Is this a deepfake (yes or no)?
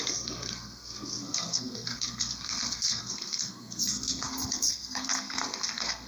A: yes